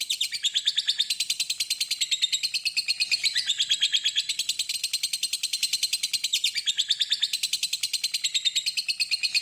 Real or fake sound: real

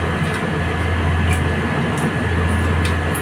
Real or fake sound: real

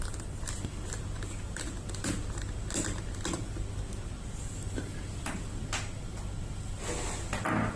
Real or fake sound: real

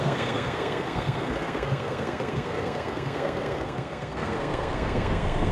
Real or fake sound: fake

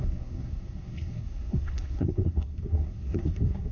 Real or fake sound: fake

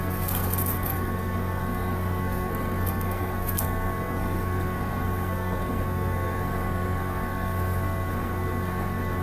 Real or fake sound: fake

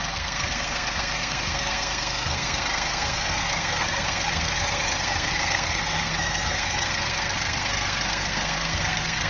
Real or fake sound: fake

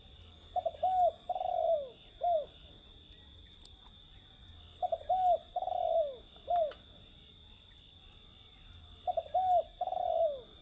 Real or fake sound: real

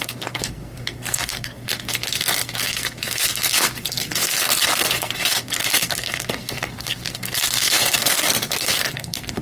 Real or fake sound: fake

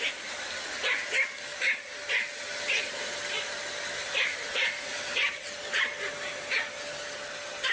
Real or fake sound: real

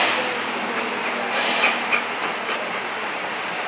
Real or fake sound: real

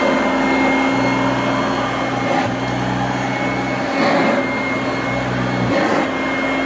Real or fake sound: real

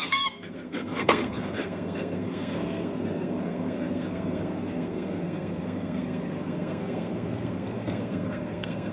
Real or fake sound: fake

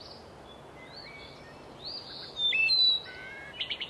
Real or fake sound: real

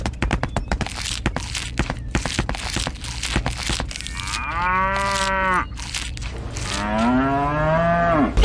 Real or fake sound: real